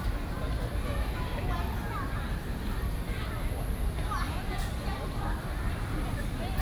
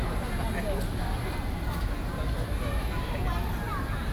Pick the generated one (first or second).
first